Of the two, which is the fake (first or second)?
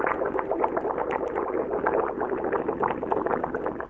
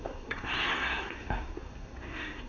second